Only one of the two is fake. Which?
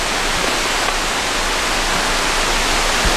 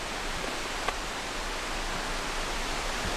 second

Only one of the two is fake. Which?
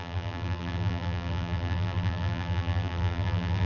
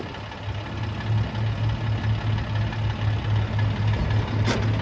first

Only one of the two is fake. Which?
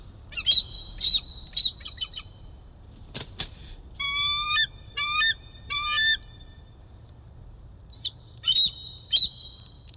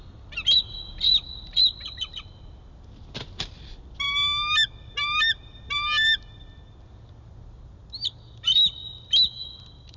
first